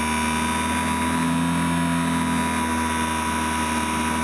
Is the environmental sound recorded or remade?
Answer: recorded